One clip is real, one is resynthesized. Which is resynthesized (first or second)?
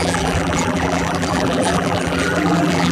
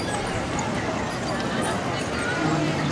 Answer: first